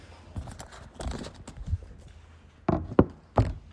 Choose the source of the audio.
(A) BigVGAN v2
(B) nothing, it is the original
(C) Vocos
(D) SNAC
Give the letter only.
B